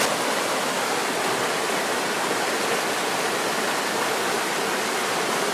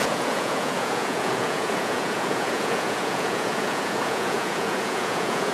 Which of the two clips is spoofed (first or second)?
second